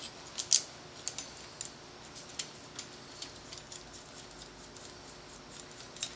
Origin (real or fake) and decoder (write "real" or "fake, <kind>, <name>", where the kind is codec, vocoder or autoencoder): real